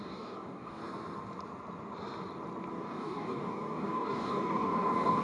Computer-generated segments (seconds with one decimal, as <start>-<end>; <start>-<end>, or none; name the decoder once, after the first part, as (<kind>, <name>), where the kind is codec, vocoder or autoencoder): 0.0-0.8 (codec, DAC); 2.7-5.2